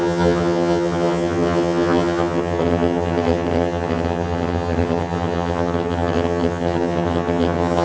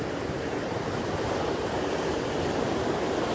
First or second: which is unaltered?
second